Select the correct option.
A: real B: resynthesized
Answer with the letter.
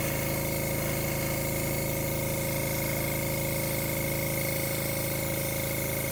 A